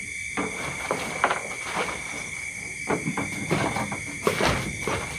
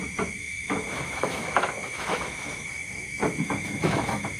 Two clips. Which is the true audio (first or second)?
first